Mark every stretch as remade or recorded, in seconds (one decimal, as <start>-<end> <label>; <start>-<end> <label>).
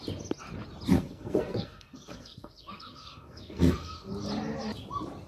0.0-0.9 recorded; 0.9-4.1 remade; 4.1-5.3 recorded